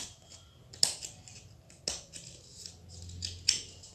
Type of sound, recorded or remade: recorded